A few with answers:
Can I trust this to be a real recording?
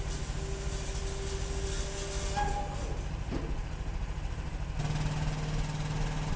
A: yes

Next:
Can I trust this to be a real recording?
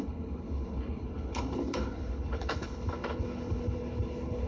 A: no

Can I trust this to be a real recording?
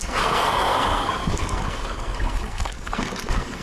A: no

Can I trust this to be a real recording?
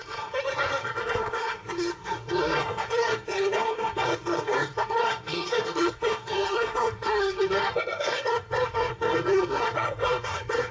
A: no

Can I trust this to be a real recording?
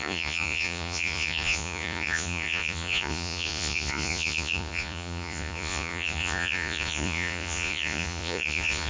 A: no